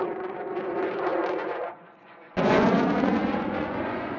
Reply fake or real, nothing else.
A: fake